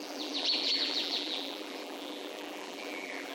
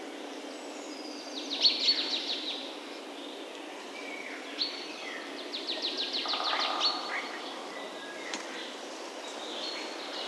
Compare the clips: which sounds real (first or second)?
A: second